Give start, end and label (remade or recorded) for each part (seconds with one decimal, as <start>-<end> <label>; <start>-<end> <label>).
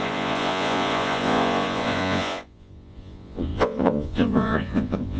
0.0-5.2 remade